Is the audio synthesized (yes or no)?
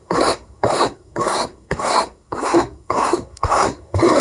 yes